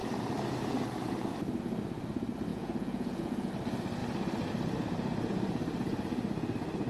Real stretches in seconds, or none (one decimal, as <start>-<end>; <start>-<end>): 0.0-2.5; 3.5-6.9